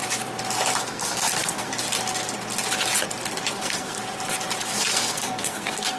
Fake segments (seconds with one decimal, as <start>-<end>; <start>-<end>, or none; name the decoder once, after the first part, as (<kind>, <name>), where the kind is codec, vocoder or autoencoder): 0.8-1.7 (codec, SNAC); 3.5-4.0; 4.6-6.0